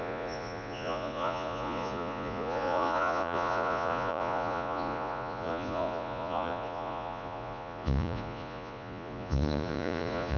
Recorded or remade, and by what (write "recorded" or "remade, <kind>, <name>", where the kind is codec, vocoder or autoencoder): remade, vocoder, Vocos